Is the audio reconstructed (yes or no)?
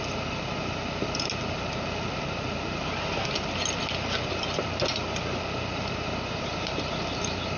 no